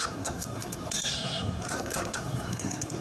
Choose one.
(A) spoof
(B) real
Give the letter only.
A